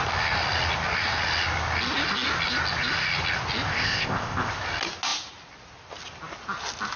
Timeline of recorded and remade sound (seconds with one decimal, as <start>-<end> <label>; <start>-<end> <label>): 0.0-3.7 recorded; 3.7-4.5 remade; 4.5-7.0 recorded